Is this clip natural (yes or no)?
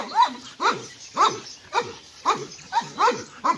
no